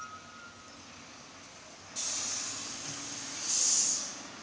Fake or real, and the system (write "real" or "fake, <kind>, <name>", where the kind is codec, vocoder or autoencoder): real